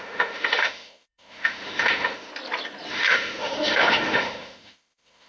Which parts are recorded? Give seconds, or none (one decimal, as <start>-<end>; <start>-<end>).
2.3-2.9